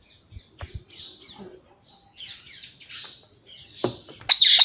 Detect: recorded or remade recorded